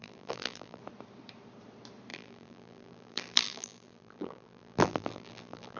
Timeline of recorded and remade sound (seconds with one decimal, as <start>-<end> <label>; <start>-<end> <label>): 0.0-0.8 remade; 0.8-2.1 recorded; 2.1-5.8 remade